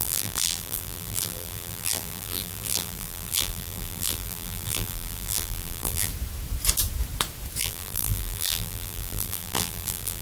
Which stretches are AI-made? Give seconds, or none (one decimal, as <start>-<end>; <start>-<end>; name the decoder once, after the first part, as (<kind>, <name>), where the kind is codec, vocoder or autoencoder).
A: 0.0-6.1 (vocoder, BigVGAN v2); 7.6-10.2